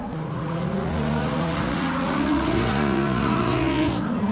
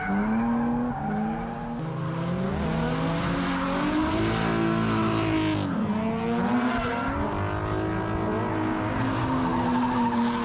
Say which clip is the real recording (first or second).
second